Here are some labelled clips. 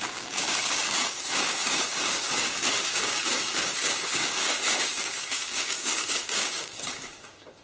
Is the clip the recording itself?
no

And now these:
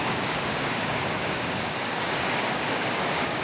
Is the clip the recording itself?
no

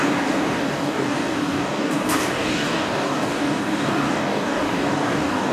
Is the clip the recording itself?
no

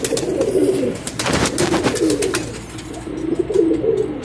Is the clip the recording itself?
yes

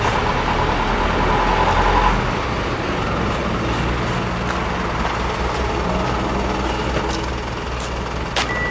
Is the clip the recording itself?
yes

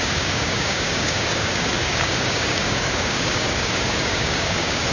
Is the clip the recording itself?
no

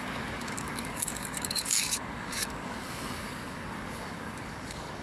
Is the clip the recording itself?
no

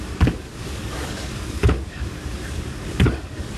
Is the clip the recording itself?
no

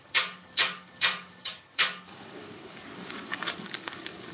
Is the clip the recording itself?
no